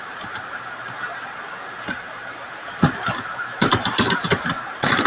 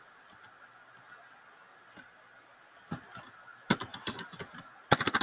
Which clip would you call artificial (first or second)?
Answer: first